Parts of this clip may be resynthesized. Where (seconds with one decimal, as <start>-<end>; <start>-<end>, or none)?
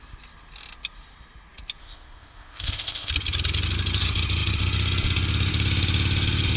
1.8-3.1